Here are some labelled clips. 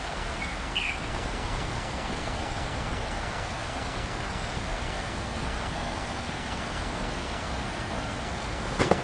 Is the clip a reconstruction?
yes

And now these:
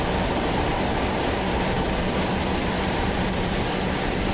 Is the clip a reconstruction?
no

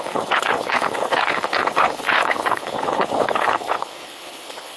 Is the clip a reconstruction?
yes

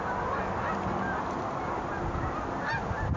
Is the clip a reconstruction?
no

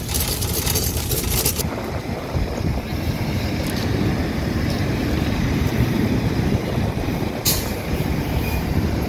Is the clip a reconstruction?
yes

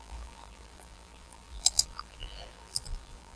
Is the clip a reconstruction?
yes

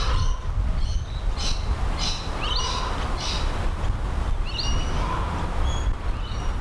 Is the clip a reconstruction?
no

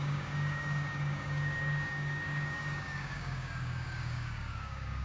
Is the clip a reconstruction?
yes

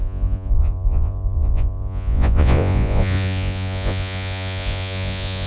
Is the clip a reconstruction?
yes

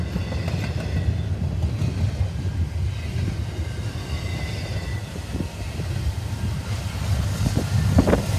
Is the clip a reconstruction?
no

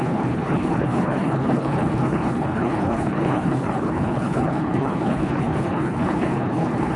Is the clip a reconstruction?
yes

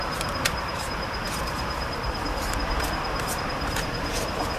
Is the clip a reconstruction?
yes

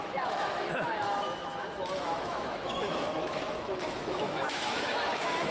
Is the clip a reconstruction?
yes